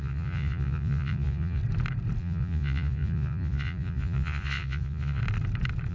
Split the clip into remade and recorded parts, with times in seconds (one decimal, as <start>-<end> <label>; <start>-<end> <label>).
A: 0.0-1.6 remade; 1.6-2.2 recorded; 2.2-5.2 remade; 5.2-5.9 recorded